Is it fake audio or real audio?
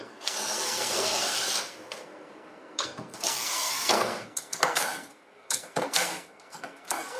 fake